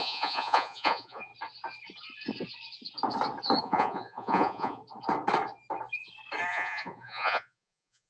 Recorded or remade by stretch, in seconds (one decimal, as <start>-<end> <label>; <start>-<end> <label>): 0.0-1.3 remade; 1.3-3.6 recorded; 3.6-4.8 remade; 4.8-6.5 recorded; 6.5-8.1 remade